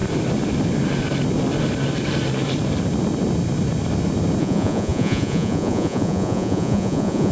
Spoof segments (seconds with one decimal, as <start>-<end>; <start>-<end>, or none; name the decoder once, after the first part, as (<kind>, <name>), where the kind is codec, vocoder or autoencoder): 4.4-7.3 (vocoder, Vocos)